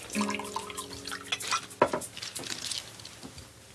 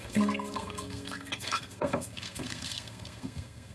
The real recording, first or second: first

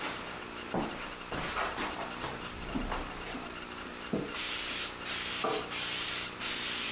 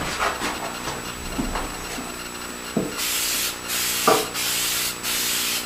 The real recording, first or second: second